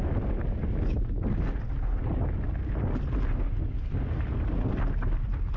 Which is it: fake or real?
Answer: real